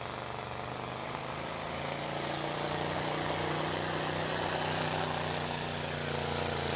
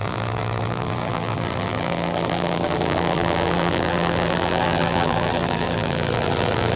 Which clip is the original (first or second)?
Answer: first